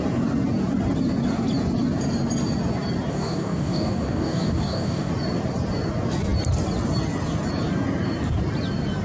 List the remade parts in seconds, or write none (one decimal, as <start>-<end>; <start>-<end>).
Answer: 3.1-5.1